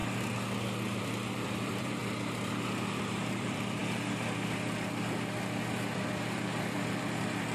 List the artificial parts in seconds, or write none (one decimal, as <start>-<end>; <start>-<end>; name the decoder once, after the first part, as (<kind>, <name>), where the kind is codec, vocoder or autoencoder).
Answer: 1.0-2.0 (vocoder, BigVGAN v2); 3.0-3.8; 5.7-7.5